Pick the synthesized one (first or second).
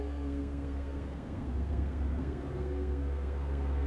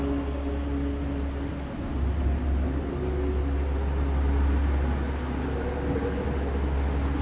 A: first